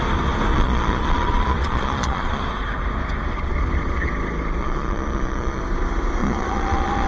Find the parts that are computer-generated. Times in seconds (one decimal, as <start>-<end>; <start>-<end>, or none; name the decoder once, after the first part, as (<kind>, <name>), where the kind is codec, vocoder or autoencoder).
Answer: 0.5-2.4 (vocoder, Vocos); 4.6-5.6; 6.2-7.1